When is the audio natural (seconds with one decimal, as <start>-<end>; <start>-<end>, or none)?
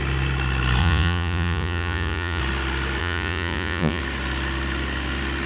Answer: 0.0-0.8; 2.4-3.0; 4.0-5.5